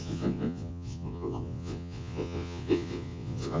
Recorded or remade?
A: remade